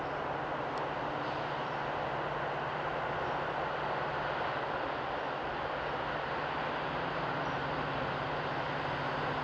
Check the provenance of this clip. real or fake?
real